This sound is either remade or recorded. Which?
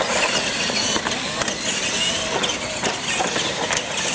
recorded